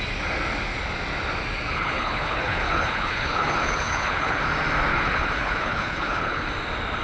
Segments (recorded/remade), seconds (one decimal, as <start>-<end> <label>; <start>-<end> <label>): 0.0-1.7 recorded; 1.7-4.4 remade; 4.4-4.9 recorded; 4.9-6.5 remade; 6.5-7.0 recorded